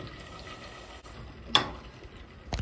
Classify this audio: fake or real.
real